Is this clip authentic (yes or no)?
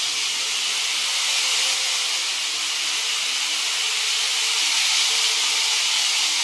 yes